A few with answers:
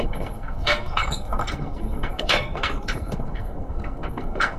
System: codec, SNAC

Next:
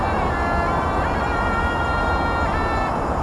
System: none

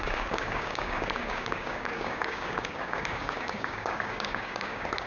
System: codec, DAC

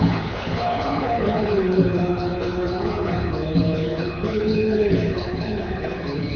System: codec, HILCodec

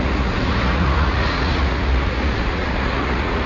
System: vocoder, Vocos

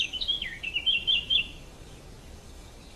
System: codec, DAC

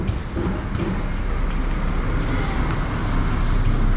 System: none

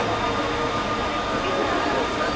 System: none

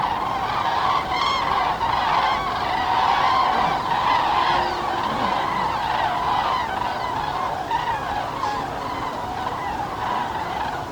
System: none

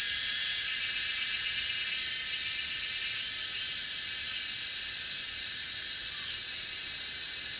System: none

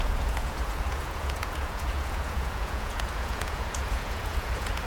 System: vocoder, Vocos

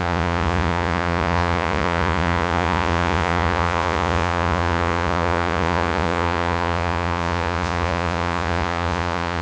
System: vocoder, Vocos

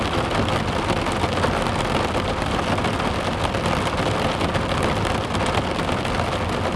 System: none